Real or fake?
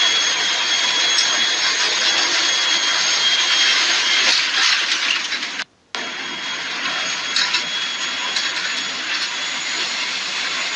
real